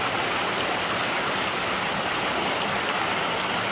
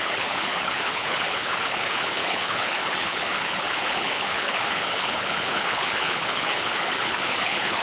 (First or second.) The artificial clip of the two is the second